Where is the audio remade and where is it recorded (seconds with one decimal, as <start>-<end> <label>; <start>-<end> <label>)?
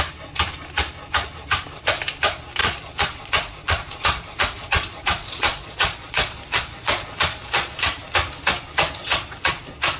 0.0-2.6 recorded; 2.6-7.8 remade; 7.8-9.0 recorded; 9.0-9.6 remade; 9.6-10.0 recorded